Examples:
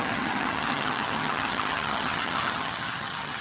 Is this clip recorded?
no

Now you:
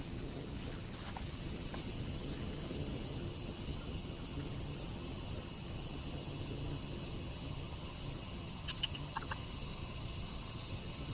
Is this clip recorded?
no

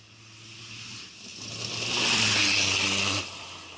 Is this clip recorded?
yes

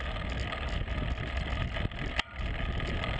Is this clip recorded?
yes